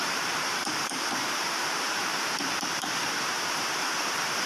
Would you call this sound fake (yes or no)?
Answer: yes